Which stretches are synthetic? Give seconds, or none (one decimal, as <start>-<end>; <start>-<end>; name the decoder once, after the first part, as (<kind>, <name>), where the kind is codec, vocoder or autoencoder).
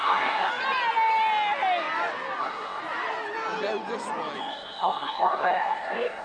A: 0.0-0.5 (codec, SNAC); 2.4-2.8; 4.4-6.2